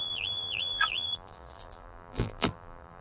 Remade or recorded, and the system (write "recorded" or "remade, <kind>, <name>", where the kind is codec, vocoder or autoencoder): remade, vocoder, BigVGAN v2